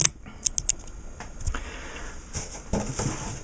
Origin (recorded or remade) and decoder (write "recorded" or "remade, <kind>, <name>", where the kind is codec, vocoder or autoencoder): recorded